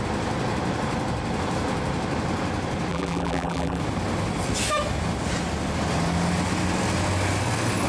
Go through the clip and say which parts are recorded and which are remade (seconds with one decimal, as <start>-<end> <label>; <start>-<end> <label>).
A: 0.0-2.9 recorded; 2.9-3.8 remade; 3.8-7.9 recorded